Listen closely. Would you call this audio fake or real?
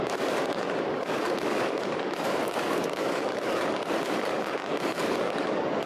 fake